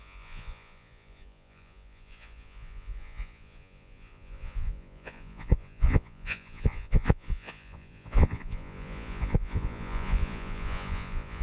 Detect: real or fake fake